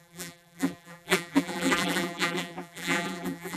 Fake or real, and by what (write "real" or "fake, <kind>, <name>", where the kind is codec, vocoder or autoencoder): fake, vocoder, BigVGAN v2